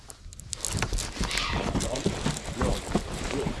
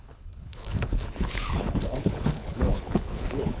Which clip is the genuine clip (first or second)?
first